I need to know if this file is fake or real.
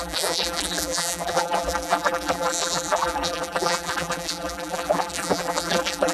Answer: fake